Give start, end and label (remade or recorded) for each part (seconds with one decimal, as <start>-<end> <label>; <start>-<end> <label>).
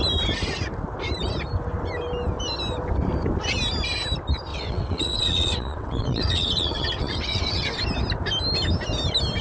0.0-4.5 recorded; 4.5-7.8 remade; 7.8-9.4 recorded